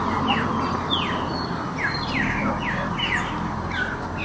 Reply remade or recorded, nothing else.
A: recorded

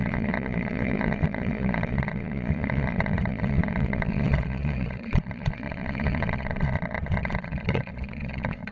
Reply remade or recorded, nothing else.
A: remade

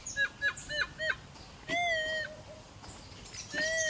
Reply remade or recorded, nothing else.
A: recorded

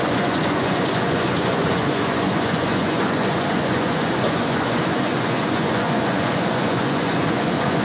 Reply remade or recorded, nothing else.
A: remade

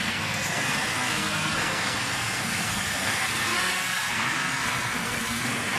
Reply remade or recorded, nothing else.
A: remade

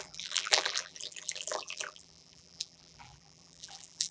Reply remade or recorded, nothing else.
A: remade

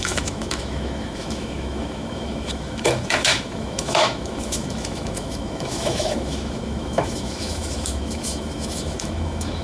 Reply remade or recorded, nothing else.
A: remade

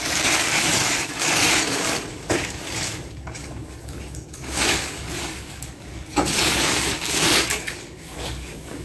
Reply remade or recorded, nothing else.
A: remade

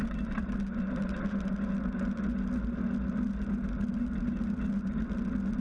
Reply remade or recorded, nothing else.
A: recorded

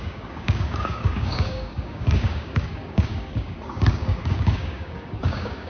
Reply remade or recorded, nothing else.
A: remade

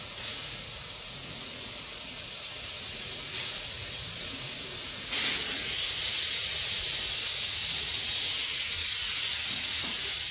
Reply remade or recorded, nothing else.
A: remade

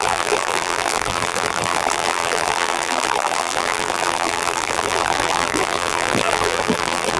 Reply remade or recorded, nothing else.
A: remade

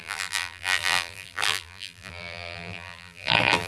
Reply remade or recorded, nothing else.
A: remade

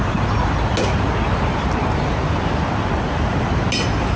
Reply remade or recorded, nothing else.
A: recorded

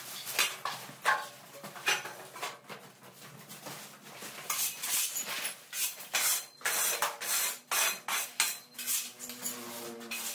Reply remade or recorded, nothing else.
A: recorded